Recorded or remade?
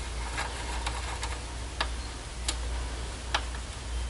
recorded